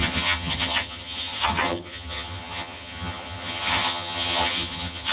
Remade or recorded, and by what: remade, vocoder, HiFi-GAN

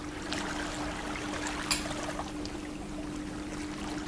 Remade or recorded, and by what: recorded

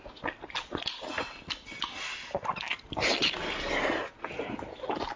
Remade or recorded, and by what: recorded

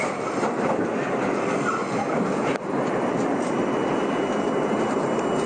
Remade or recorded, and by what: recorded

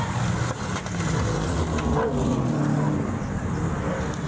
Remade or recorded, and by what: recorded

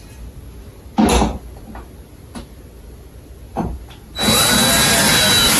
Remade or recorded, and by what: recorded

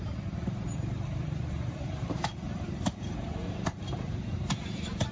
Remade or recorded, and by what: remade, vocoder, BigVGAN v2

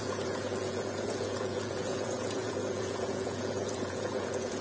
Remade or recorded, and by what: remade, vocoder, Vocos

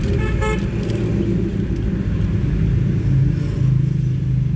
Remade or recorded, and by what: recorded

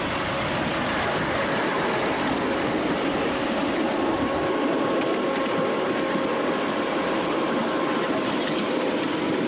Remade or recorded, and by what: recorded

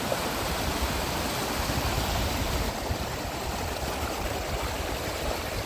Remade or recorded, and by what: recorded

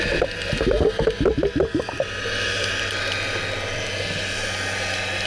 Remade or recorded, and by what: recorded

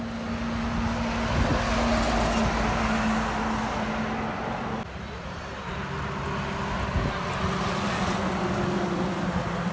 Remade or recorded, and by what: recorded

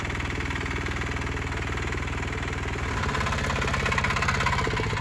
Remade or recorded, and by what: recorded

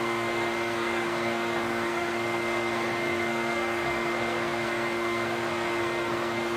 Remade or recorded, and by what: remade, codec, SNAC